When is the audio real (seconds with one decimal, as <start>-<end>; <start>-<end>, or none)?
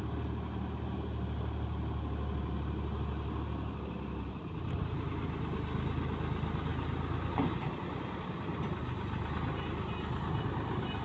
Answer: 0.0-11.0